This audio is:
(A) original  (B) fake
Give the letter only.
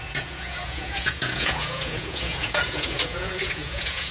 B